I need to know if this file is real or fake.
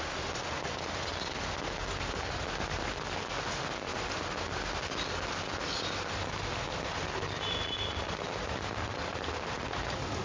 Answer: real